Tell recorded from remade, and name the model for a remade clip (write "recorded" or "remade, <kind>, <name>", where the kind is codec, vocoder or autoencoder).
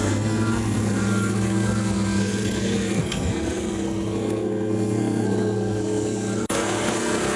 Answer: remade, codec, SNAC